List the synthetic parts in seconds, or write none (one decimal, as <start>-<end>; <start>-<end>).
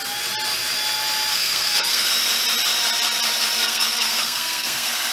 1.3-2.1; 3.6-5.1